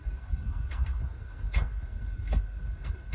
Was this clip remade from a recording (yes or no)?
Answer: yes